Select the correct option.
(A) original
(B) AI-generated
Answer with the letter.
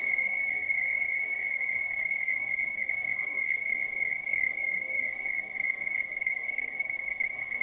B